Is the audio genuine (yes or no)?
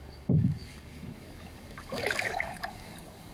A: no